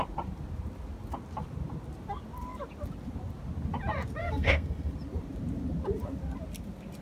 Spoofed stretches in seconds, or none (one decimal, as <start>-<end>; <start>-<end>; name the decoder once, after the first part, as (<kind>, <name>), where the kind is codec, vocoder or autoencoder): 4.2-4.9 (codec, SNAC)